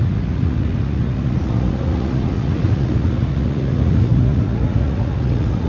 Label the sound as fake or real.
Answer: fake